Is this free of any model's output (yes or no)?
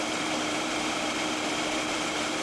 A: no